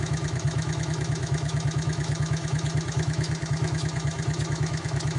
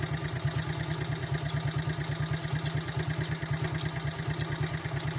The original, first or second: second